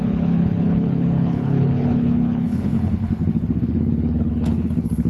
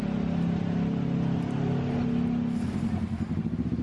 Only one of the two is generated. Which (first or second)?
first